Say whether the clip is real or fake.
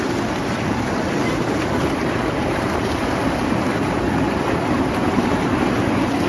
fake